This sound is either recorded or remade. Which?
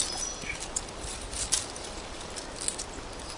recorded